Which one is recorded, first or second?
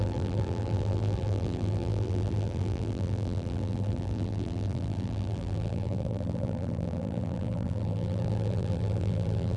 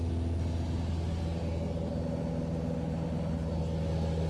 second